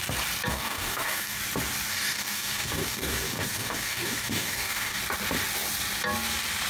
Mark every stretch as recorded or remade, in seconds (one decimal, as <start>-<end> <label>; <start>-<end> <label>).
0.0-0.5 recorded; 0.5-1.4 remade; 1.4-1.9 recorded; 1.9-5.0 remade; 5.0-6.7 recorded